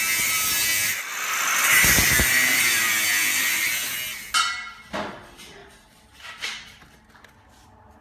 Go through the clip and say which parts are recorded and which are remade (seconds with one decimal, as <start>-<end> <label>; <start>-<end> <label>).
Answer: 0.0-8.0 recorded